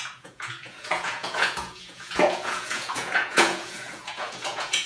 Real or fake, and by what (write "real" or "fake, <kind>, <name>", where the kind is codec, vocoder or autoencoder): fake, vocoder, Vocos